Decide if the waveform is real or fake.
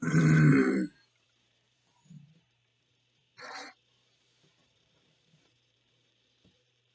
fake